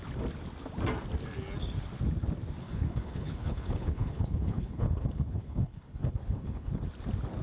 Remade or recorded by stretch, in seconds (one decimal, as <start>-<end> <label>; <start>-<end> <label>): 0.0-2.6 recorded; 2.6-6.8 remade; 6.8-7.4 recorded